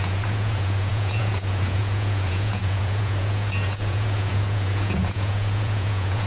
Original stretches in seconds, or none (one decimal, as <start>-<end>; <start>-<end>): none